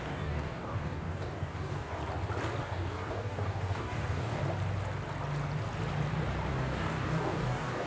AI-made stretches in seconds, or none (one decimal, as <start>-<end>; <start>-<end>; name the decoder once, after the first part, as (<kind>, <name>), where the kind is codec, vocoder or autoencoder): 0.0-2.0 (codec, DAC); 2.6-4.4; 6.5-7.9